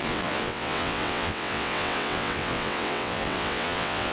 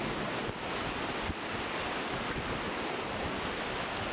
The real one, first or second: second